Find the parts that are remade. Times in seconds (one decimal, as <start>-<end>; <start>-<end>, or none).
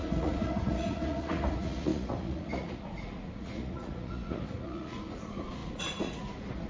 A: 0.0-6.7